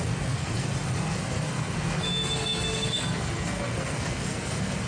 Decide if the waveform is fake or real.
fake